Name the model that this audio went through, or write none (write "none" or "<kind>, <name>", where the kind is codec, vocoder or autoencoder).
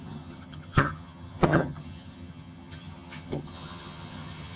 vocoder, HiFi-GAN